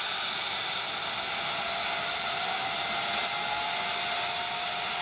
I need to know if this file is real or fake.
real